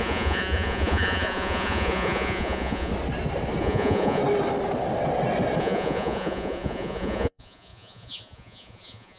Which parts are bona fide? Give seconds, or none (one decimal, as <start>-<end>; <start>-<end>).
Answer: 2.9-3.6; 4.2-5.6